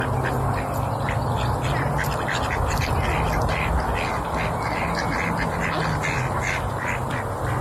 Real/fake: real